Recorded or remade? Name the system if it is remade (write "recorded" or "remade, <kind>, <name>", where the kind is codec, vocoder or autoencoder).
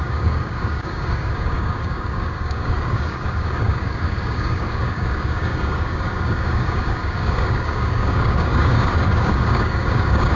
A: remade, codec, DAC